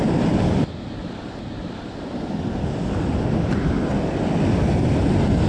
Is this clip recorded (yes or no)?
yes